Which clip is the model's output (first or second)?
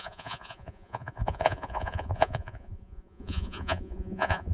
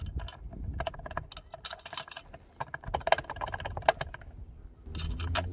first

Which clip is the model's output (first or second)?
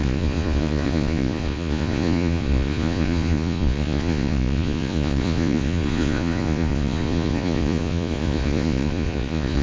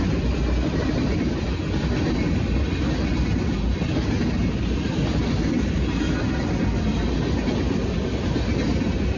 first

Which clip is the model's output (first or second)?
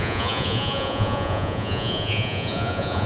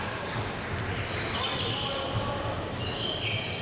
first